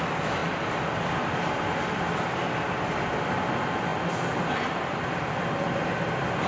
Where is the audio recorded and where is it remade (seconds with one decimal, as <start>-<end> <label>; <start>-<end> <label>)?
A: 0.0-3.9 remade; 3.9-4.9 recorded; 4.9-6.5 remade